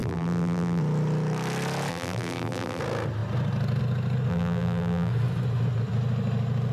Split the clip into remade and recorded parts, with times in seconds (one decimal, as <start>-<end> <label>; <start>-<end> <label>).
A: 0.0-0.8 remade; 0.8-1.9 recorded; 1.9-2.8 remade; 2.8-4.3 recorded; 4.3-5.1 remade; 5.1-6.7 recorded